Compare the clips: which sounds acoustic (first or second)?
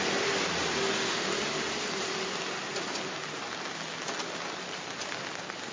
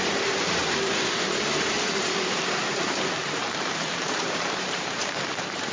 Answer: first